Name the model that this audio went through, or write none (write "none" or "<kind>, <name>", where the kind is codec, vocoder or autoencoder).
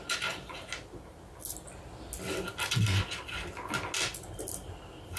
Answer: none